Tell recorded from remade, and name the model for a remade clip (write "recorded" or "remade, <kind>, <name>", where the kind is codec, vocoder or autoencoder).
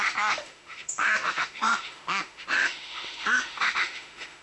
remade, autoencoder, DAC-VAE